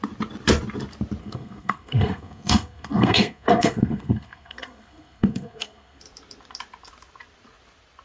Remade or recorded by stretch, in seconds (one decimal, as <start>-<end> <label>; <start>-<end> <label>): 0.0-1.2 recorded; 1.2-6.0 remade; 6.0-8.0 recorded